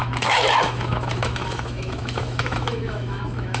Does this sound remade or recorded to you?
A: remade